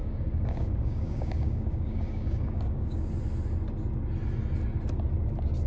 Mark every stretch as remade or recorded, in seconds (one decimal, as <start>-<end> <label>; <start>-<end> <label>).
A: 0.0-3.1 remade; 3.1-5.7 recorded